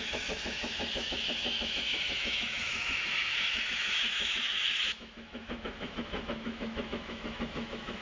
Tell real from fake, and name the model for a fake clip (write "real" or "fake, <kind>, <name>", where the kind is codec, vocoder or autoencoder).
fake, autoencoder, DAC-VAE